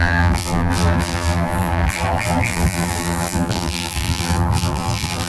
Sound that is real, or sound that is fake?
fake